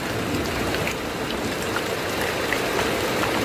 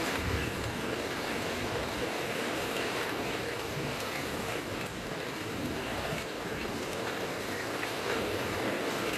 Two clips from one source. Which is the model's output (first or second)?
second